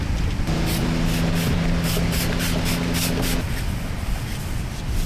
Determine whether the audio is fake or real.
real